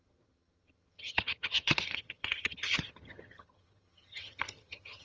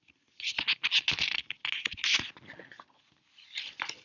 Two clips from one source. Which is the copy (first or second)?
first